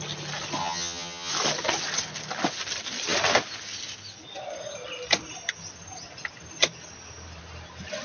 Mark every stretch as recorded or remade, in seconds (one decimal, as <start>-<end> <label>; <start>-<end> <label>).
0.0-0.6 recorded; 0.6-1.3 remade; 1.3-8.0 recorded